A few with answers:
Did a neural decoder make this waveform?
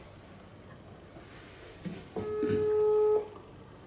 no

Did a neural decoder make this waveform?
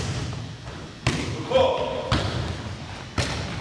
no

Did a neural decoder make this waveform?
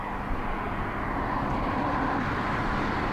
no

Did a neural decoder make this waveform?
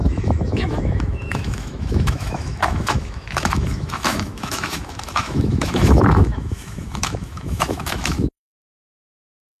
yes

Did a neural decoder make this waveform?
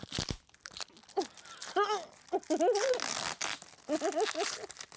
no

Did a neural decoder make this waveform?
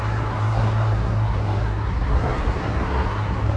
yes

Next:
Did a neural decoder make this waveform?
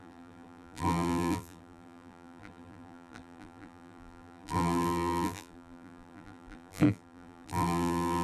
yes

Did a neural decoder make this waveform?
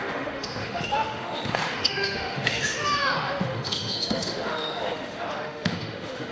yes